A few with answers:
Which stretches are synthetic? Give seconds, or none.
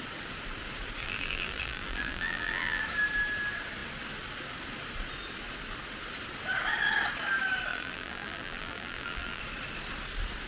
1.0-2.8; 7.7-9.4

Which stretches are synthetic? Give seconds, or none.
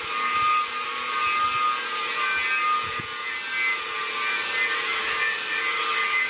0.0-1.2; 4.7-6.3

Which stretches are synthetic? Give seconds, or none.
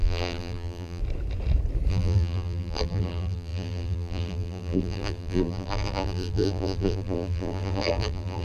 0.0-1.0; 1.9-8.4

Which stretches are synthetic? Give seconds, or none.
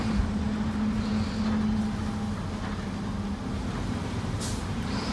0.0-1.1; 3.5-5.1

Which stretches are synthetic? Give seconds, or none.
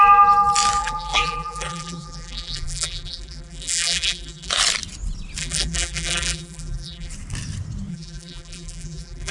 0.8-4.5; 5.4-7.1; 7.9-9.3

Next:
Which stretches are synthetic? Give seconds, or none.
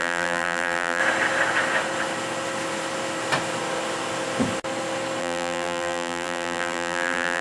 0.0-1.0; 5.2-7.4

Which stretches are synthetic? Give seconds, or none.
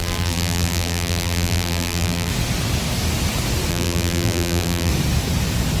0.0-2.3; 3.7-4.9